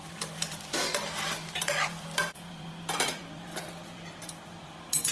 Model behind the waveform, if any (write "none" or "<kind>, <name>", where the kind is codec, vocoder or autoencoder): vocoder, BigVGAN v2